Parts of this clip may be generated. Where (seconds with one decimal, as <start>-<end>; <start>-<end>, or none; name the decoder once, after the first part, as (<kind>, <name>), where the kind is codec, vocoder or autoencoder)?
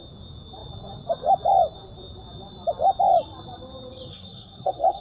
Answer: 4.1-5.0 (codec, SNAC)